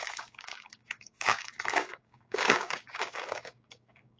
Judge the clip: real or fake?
fake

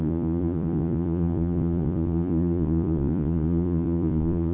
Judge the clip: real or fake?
fake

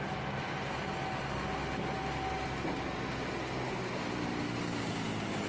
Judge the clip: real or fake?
real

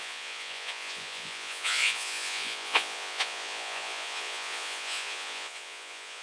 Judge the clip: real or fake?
fake